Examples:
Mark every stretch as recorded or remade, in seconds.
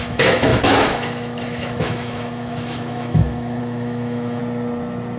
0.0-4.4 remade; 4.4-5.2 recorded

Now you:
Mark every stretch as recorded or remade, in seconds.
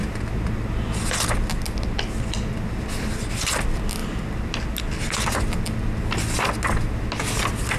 0.0-7.8 recorded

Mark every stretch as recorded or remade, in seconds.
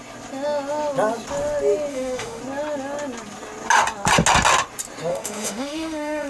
0.0-1.9 recorded; 1.9-2.4 remade; 2.4-5.1 recorded; 5.1-6.3 remade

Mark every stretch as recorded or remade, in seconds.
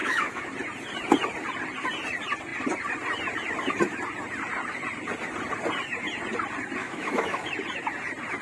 0.0-0.5 remade; 0.5-6.8 recorded; 6.8-7.5 remade; 7.5-8.4 recorded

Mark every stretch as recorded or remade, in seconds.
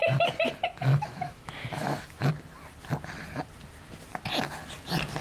0.0-0.9 recorded; 0.9-2.3 remade; 2.3-5.2 recorded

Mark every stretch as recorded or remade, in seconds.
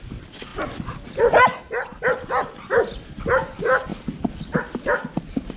0.0-5.6 recorded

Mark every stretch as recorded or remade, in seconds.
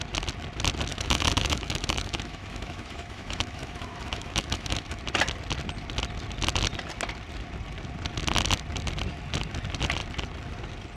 0.0-0.9 recorded; 0.9-5.0 remade; 5.0-11.0 recorded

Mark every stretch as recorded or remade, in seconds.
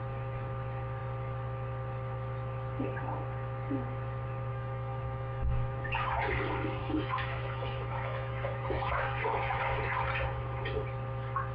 0.0-4.5 recorded; 4.5-6.2 remade; 6.2-6.8 recorded; 6.8-9.6 remade; 9.6-11.5 recorded